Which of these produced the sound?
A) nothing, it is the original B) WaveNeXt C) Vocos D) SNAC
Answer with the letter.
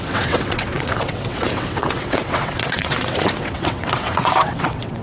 B